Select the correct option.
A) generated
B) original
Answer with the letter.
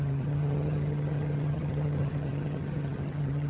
A